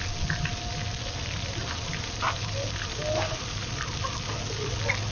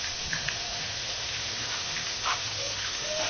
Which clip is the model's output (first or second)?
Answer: second